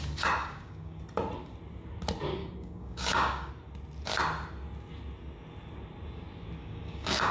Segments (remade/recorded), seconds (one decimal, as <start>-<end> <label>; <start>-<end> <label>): 0.0-0.4 recorded; 0.4-1.0 remade; 1.0-2.4 recorded; 2.4-3.5 remade; 3.5-6.6 recorded; 6.6-7.3 remade